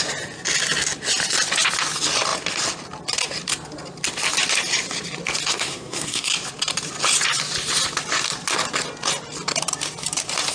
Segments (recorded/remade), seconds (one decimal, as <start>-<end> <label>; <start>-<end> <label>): 0.0-5.5 recorded; 5.5-6.3 remade; 6.3-10.5 recorded